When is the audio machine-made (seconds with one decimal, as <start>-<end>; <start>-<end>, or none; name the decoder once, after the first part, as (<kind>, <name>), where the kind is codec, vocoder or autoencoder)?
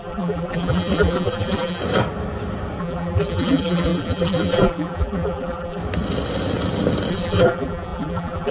0.0-1.8 (vocoder, BigVGAN v2); 2.8-5.8; 7.1-8.5